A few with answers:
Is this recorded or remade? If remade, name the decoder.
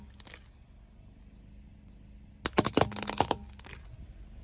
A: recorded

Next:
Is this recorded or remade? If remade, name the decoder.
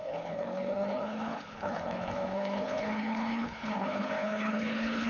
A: remade, codec, HILCodec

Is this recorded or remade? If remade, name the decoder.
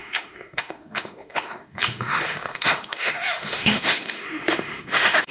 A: remade, autoencoder, DAC-VAE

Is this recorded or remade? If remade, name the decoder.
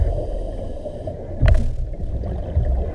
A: recorded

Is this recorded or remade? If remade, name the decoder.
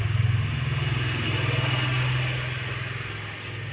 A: recorded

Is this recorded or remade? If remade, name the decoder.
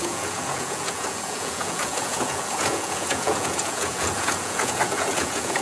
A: remade, vocoder, Vocos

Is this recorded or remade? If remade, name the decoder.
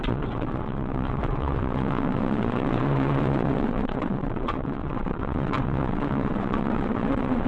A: remade, vocoder, WaveNeXt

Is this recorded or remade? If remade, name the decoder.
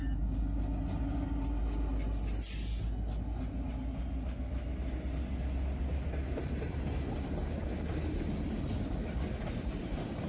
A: recorded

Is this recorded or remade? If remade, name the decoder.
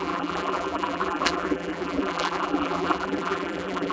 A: remade, vocoder, BigVGAN v2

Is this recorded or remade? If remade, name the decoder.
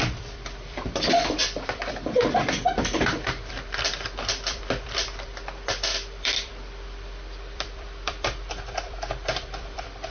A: remade, vocoder, BigVGAN v2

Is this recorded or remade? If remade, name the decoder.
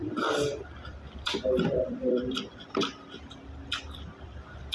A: remade, vocoder, BigVGAN v2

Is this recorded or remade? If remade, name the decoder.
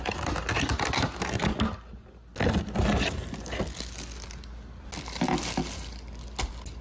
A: recorded